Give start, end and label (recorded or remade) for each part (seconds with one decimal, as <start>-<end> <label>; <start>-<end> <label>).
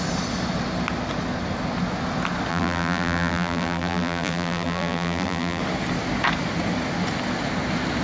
0.0-2.5 recorded; 2.5-5.6 remade; 5.6-8.0 recorded